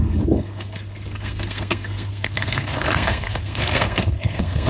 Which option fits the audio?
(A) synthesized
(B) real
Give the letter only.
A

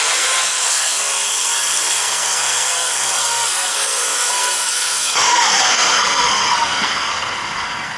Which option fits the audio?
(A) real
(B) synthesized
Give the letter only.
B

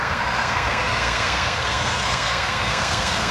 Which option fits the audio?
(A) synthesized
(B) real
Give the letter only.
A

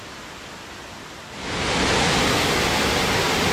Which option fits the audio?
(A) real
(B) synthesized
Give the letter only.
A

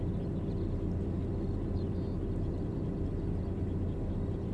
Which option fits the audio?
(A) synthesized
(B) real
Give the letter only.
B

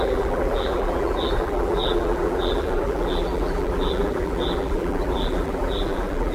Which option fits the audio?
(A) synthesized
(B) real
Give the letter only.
A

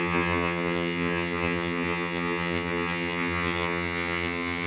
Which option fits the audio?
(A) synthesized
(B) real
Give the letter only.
A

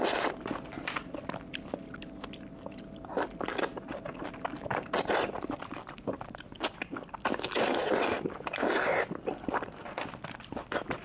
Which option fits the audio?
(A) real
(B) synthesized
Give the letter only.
A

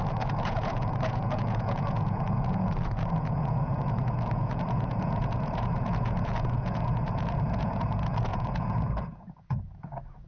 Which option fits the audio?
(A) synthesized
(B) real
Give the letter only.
A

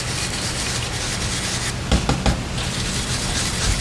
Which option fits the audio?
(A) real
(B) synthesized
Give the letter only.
A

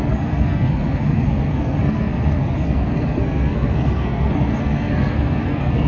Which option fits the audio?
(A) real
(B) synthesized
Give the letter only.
B